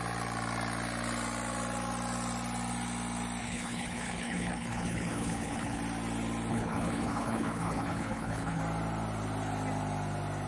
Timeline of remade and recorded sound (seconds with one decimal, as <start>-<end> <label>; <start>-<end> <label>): 0.0-3.4 recorded; 3.4-5.8 remade; 5.8-6.5 recorded; 6.5-8.6 remade; 8.6-10.5 recorded